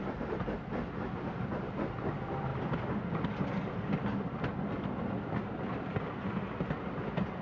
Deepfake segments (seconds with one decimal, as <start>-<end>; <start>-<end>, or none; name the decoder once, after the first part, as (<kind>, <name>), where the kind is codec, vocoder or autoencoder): none